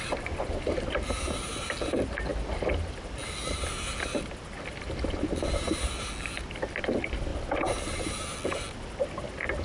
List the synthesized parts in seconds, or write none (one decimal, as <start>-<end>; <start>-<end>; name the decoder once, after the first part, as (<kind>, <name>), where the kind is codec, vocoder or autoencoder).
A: none